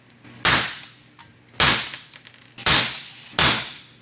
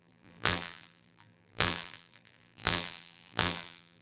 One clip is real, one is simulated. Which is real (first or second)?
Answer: first